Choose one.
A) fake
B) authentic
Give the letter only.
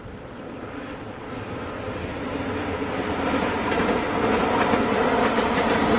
B